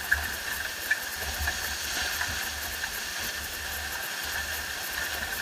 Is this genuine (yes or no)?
yes